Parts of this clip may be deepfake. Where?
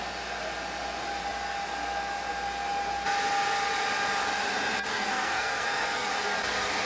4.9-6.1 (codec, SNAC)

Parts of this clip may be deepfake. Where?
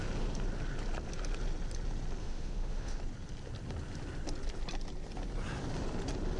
2.2-3.0 (autoencoder, DAC-VAE)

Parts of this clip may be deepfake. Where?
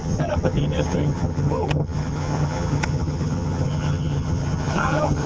0.0-5.3 (vocoder, HiFi-GAN)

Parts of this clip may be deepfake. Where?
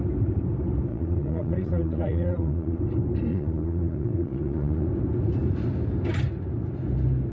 0.9-2.8 (vocoder, Vocos); 3.3-4.9